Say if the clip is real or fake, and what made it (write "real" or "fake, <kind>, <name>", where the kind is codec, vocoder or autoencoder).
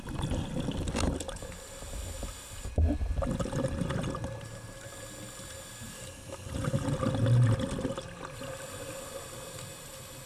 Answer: real